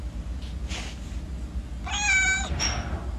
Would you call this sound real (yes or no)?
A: yes